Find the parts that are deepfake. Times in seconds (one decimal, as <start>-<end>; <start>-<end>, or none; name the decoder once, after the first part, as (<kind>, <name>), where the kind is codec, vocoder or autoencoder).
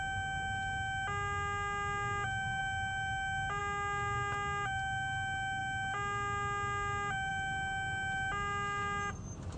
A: none